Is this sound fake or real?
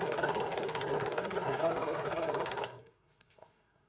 fake